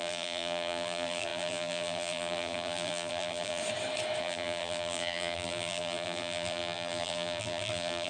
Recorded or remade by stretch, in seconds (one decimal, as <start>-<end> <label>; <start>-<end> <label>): 0.0-3.6 remade; 3.6-4.2 recorded; 4.2-8.1 remade